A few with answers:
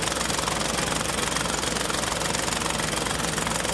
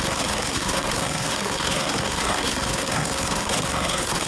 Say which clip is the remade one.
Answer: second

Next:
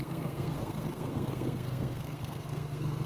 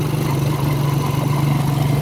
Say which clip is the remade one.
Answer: first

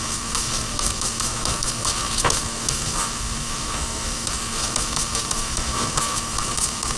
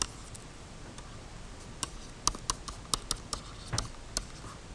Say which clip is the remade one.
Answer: first